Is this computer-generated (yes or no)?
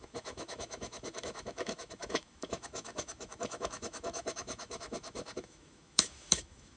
yes